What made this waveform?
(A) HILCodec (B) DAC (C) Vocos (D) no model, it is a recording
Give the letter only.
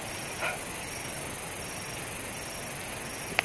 D